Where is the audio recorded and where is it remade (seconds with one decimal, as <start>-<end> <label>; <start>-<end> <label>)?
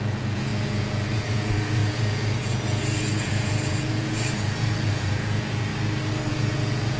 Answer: 0.0-5.7 remade; 5.7-6.3 recorded; 6.3-7.0 remade